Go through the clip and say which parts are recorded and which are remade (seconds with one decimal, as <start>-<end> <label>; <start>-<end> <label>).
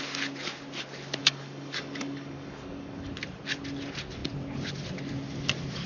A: 0.0-1.2 recorded; 1.2-3.1 remade; 3.1-5.9 recorded